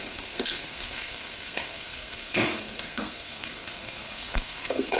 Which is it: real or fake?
fake